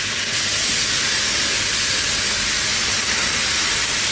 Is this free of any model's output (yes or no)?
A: yes